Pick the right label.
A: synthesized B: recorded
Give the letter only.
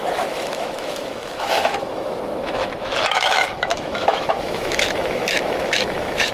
A